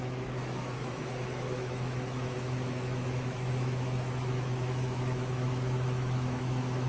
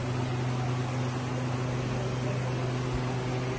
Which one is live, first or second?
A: second